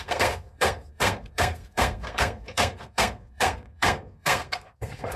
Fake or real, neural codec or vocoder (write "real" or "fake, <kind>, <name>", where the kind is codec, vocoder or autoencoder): fake, codec, SNAC